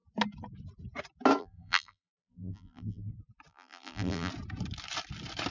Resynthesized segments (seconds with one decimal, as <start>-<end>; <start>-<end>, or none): 1.4-3.1; 3.5-4.3

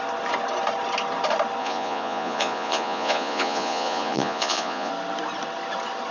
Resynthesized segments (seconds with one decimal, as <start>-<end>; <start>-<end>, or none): 1.6-4.9

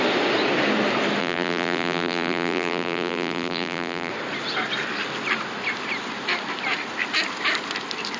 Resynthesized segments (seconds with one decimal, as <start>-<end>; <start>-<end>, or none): 1.2-4.1

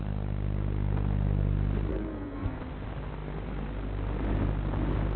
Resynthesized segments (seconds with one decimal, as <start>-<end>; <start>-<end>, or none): 1.9-2.6

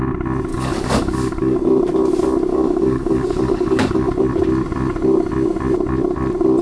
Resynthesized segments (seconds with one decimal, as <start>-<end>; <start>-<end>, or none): 0.5-1.6; 2.5-4.1

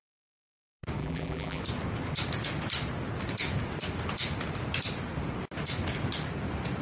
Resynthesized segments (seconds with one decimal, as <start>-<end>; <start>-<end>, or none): 1.0-1.6